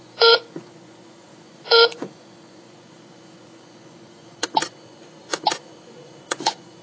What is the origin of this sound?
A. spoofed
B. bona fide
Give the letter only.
A